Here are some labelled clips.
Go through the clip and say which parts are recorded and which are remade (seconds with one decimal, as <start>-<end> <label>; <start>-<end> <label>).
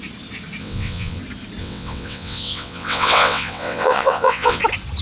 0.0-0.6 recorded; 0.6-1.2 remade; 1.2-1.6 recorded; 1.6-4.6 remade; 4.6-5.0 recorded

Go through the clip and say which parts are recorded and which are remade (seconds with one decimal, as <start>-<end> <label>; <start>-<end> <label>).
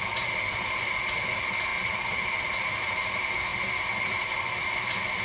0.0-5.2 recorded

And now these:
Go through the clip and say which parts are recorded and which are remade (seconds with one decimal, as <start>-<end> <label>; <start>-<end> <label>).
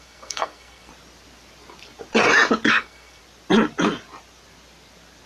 0.0-0.9 remade; 0.9-2.7 recorded; 2.7-3.2 remade; 3.2-5.3 recorded